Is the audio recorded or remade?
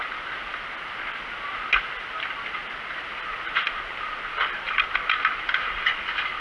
recorded